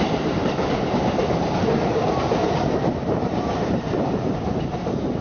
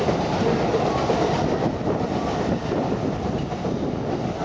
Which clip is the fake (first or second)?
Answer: first